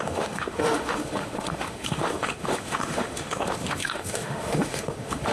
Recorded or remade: remade